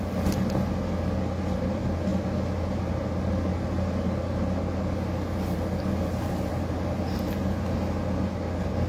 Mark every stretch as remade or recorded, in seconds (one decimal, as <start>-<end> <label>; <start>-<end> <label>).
0.0-8.9 recorded